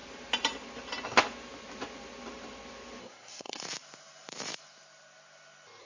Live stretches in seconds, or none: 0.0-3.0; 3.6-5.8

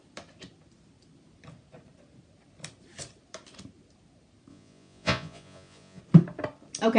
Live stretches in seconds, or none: 0.0-4.5; 6.0-7.0